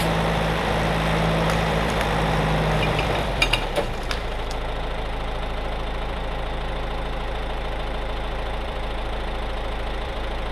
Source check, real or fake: fake